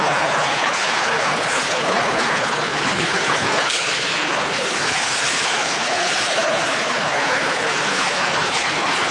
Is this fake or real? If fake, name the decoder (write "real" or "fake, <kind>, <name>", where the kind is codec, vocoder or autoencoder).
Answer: fake, codec, HILCodec